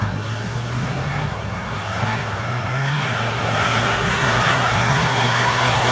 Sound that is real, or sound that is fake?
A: fake